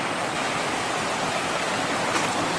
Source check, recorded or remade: recorded